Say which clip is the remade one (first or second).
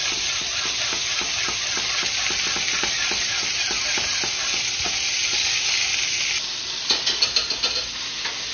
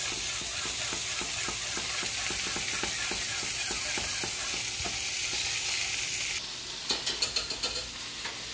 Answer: first